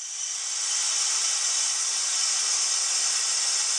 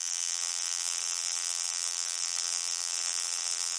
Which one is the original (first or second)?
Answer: first